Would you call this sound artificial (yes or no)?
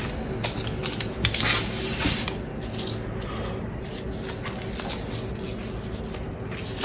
no